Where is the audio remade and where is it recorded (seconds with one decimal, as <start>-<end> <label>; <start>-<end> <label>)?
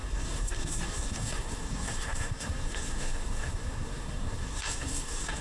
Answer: 0.0-5.4 remade